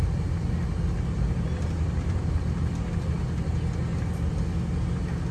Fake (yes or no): no